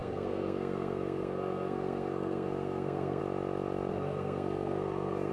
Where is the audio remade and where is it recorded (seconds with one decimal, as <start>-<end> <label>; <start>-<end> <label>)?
0.0-3.2 remade; 3.2-3.9 recorded; 3.9-5.3 remade